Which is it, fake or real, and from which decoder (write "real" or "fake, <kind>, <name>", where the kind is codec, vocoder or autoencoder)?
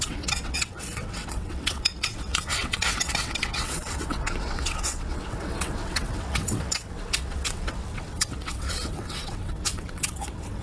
fake, vocoder, WaveNeXt